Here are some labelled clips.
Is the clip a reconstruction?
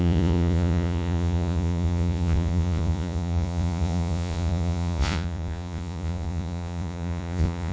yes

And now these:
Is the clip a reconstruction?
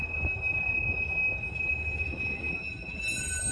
no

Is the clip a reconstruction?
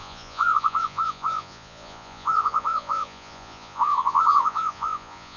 yes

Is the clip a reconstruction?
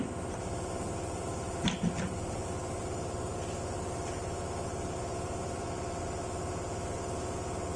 no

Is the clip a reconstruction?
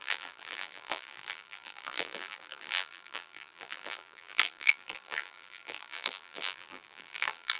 yes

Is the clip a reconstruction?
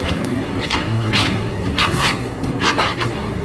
yes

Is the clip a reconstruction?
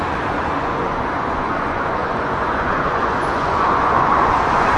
yes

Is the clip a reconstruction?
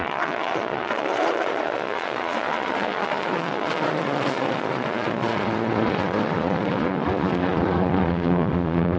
yes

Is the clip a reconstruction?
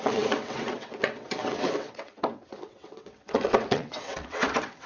yes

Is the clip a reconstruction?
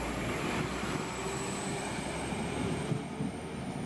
no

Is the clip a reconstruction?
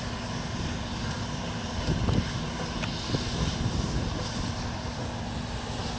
no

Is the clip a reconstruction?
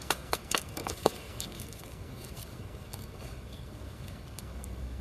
yes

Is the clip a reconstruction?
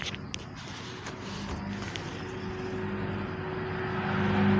no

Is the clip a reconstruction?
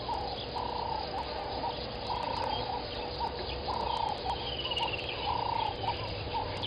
no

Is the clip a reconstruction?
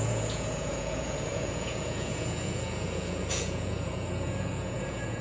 yes